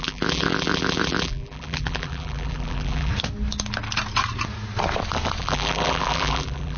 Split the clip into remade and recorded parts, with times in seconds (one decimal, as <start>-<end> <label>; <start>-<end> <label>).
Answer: 0.0-3.1 remade; 3.1-5.4 recorded; 5.4-6.8 remade